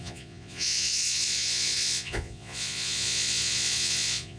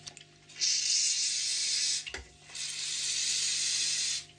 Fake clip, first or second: first